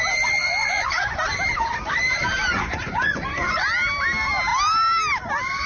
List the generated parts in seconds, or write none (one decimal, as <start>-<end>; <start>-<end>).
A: 0.6-1.2; 2.5-3.6